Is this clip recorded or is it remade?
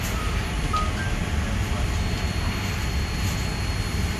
recorded